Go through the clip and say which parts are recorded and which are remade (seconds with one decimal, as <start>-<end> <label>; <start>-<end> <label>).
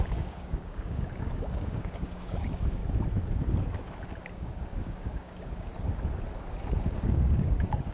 0.0-2.8 remade; 2.8-4.3 recorded; 4.3-5.7 remade; 5.7-6.6 recorded; 6.6-7.9 remade